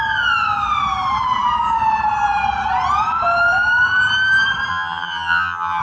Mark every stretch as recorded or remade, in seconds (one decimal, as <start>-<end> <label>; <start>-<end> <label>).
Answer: 0.0-4.7 recorded; 4.7-5.8 remade

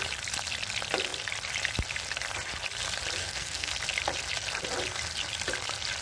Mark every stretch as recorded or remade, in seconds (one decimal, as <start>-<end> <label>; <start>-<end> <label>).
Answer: 0.0-3.2 recorded; 3.2-3.7 remade; 3.7-6.0 recorded

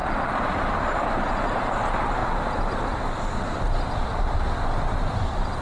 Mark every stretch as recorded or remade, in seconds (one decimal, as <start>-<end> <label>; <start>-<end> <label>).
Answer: 0.0-0.7 remade; 0.7-5.6 recorded

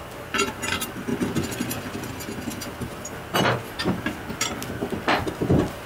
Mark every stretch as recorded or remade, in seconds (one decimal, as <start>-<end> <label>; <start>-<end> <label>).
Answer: 0.0-5.9 recorded

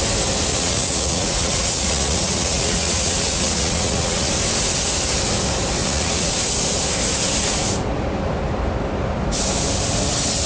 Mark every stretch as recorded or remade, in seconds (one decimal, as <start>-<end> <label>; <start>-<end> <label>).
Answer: 0.0-0.5 recorded; 0.5-4.3 remade; 4.3-5.8 recorded; 5.8-6.3 remade; 6.3-10.5 recorded